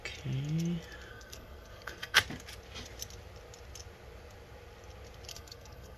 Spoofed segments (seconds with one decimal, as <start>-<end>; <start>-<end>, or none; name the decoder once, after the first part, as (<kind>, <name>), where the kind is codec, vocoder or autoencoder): 1.1-2.2 (codec, SNAC); 5.3-6.0